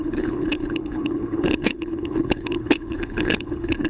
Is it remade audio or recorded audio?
remade